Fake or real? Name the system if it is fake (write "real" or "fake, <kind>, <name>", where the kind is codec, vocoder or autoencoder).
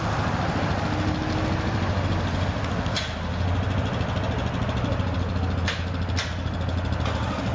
real